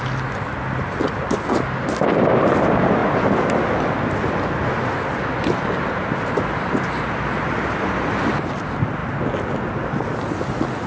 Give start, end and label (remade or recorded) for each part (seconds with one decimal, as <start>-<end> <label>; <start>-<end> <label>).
0.0-10.9 recorded